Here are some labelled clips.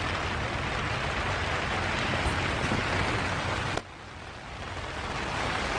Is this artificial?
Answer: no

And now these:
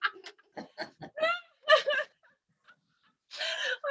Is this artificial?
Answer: no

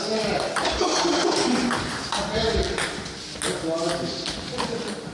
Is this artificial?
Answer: no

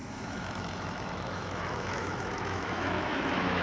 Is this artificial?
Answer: yes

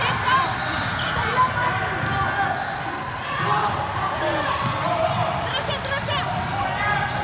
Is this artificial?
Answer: no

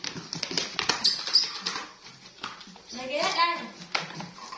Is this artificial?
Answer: no